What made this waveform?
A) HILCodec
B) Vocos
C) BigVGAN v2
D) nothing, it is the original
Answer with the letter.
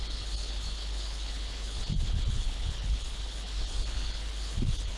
A